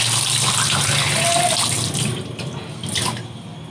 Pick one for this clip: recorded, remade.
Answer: recorded